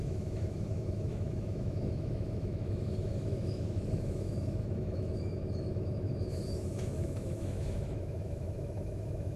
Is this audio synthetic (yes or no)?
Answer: yes